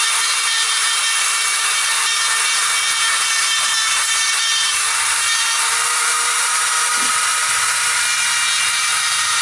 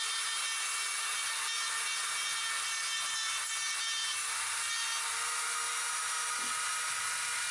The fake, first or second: first